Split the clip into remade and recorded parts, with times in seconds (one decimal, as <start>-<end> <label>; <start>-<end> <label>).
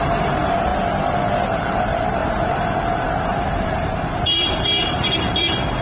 0.0-0.7 remade; 0.7-1.6 recorded; 1.6-5.8 remade